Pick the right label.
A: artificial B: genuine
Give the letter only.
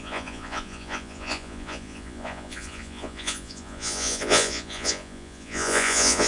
A